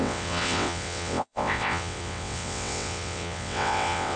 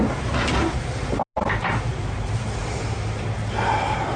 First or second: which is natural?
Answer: second